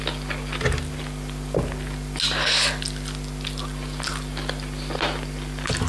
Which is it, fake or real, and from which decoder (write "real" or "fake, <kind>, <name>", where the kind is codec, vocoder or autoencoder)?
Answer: real